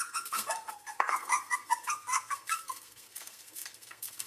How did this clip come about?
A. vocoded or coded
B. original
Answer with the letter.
A